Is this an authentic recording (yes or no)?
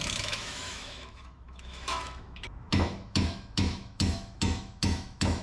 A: no